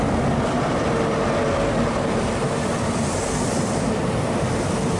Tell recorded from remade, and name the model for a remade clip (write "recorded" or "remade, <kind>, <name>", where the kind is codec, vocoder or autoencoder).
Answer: remade, vocoder, BigVGAN v2